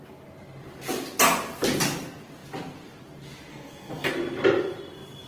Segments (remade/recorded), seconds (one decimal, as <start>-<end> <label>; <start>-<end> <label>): 0.0-3.5 recorded; 3.5-4.1 remade; 4.1-5.3 recorded